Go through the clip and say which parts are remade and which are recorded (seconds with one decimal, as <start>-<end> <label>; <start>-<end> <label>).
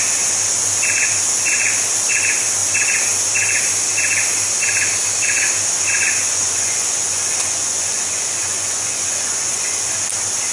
0.0-6.2 recorded; 6.2-9.9 remade; 9.9-10.5 recorded